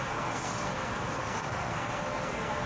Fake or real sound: fake